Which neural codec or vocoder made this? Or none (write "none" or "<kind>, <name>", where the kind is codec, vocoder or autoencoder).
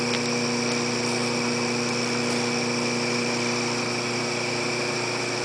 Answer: none